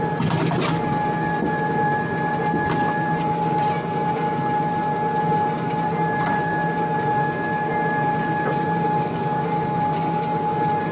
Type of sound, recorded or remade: recorded